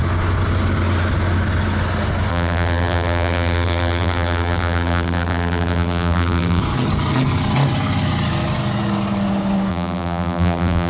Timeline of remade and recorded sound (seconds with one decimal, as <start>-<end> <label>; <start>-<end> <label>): 0.0-2.3 recorded; 2.3-6.6 remade; 6.6-9.7 recorded; 9.7-10.9 remade